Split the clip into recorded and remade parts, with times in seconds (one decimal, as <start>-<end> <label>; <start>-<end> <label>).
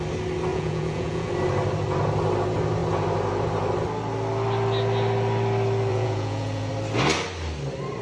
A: 0.0-0.5 recorded; 0.5-1.3 remade; 1.3-5.9 recorded; 5.9-6.7 remade; 6.7-8.0 recorded